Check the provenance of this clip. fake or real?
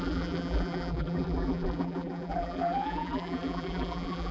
fake